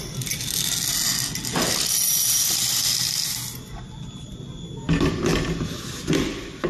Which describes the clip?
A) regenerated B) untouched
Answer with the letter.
B